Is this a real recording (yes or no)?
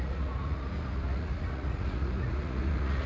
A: no